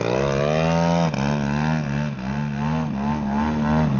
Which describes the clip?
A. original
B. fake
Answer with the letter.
A